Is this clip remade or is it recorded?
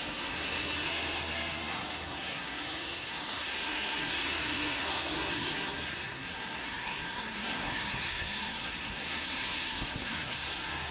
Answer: remade